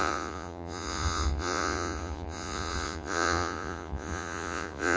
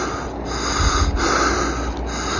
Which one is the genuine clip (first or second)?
second